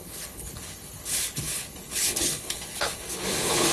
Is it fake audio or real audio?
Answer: fake